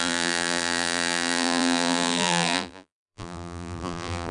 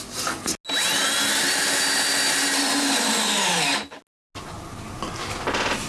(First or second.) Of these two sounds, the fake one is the first